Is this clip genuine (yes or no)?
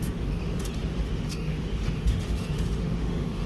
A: no